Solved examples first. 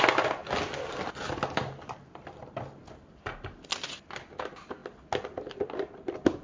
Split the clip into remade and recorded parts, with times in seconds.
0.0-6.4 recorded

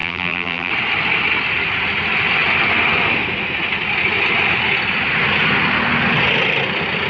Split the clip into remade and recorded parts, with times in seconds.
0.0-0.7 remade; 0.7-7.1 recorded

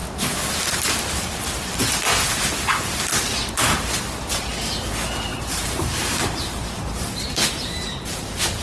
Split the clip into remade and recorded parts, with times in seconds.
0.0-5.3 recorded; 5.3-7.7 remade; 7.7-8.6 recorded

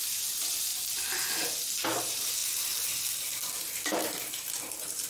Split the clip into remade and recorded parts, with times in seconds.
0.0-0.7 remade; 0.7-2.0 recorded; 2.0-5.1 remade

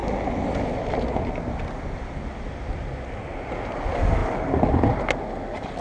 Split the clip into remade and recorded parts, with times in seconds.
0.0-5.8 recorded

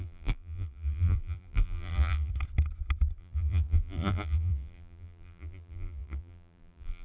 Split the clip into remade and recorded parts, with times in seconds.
0.0-2.3 remade; 2.3-3.2 recorded; 3.2-7.0 remade

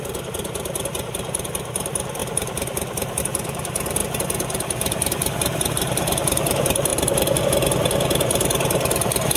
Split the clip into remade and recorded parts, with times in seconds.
0.0-2.2 remade; 2.2-3.2 recorded; 3.2-9.4 remade

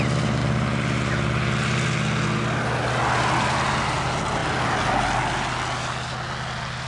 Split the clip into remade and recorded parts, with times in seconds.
0.0-6.9 recorded